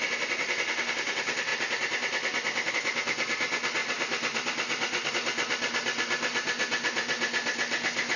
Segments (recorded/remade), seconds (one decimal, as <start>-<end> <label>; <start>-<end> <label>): 0.0-3.8 recorded; 3.8-5.1 remade; 5.1-8.2 recorded